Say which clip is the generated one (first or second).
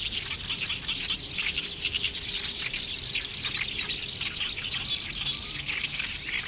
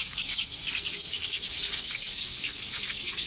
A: second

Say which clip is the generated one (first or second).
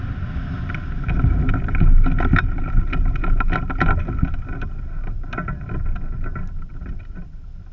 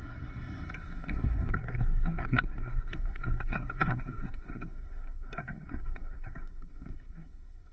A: second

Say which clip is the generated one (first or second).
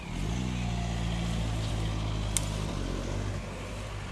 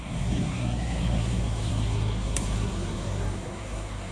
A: second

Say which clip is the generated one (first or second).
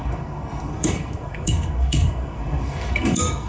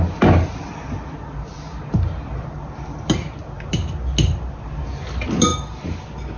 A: first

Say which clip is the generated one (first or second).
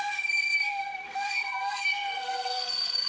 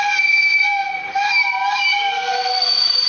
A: first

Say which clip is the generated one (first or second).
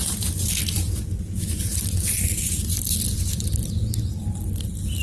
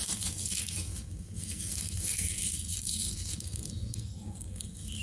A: second